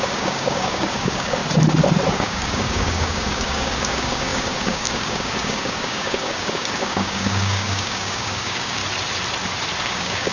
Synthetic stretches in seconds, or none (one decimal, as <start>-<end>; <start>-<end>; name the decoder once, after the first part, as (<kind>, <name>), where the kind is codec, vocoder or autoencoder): 0.0-1.4 (codec, DAC); 2.1-8.8; 9.8-10.3